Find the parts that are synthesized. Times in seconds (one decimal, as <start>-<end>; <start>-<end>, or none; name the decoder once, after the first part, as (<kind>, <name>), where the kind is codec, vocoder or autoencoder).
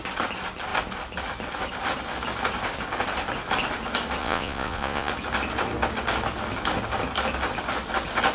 4.2-5.1 (vocoder, Vocos)